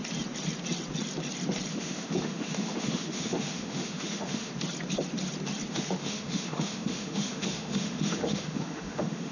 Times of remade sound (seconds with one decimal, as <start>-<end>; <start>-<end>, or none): 1.7-4.5; 5.7-9.3